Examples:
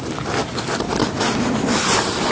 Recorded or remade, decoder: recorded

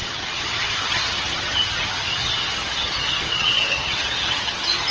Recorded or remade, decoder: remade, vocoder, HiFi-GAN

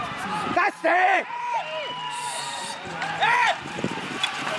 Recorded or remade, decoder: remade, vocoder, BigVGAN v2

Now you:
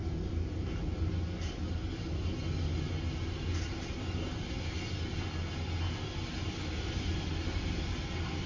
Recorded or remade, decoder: recorded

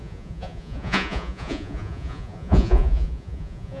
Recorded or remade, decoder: remade, vocoder, Vocos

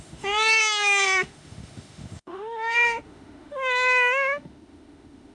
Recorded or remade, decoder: remade, autoencoder, DAC-VAE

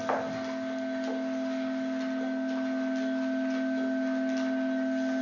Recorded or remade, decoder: recorded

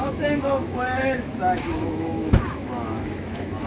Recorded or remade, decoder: remade, autoencoder, DAC-VAE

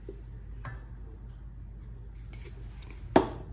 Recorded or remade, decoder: recorded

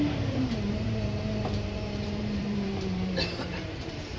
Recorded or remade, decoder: remade, vocoder, BigVGAN v2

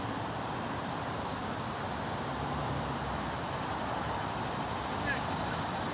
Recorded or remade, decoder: recorded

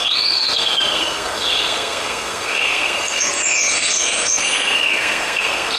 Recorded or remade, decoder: remade, codec, SNAC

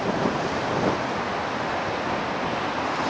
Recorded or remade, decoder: recorded